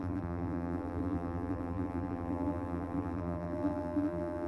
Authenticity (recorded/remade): remade